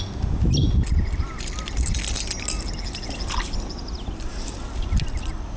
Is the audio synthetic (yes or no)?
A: no